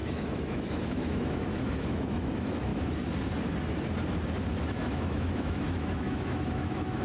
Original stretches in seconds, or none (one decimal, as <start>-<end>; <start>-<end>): 2.7-4.6

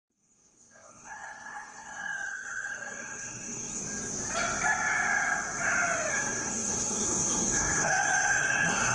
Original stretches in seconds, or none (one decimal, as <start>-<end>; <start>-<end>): 3.8-6.1

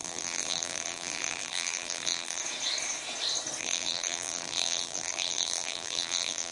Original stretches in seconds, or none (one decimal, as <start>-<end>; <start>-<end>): 2.4-3.6

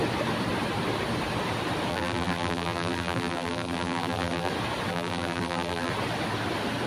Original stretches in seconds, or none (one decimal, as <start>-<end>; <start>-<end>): 0.0-1.9; 4.5-4.9; 5.9-6.9

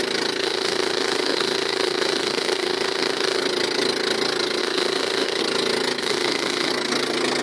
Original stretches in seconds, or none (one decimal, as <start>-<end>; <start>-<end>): 0.0-0.4; 3.4-4.6; 5.4-6.0; 6.7-7.4

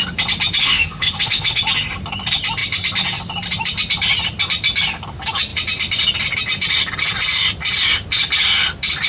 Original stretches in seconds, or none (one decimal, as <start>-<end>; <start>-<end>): 0.0-0.6; 1.6-9.1